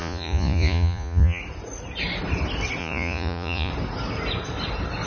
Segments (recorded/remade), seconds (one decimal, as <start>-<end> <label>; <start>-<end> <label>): 0.0-1.4 remade; 1.4-2.8 recorded; 2.8-3.7 remade; 3.7-5.1 recorded